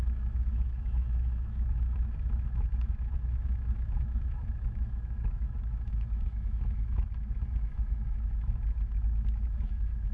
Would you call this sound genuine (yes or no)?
no